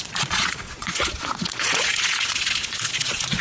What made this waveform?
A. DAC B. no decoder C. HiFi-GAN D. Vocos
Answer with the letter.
D